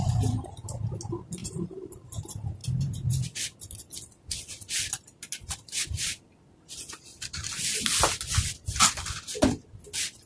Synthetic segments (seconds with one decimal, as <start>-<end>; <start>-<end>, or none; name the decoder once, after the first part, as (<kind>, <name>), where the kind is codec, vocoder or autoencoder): 1.4-2.2 (vocoder, BigVGAN v2)